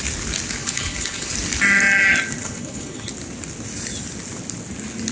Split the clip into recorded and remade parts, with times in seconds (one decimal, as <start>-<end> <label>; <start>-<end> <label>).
0.0-0.6 recorded; 0.6-1.3 remade; 1.3-2.4 recorded; 2.4-3.1 remade; 3.1-5.1 recorded